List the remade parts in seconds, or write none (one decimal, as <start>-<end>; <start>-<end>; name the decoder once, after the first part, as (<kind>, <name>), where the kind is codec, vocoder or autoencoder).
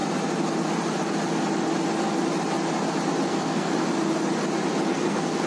3.3-3.7 (codec, SNAC); 4.8-5.5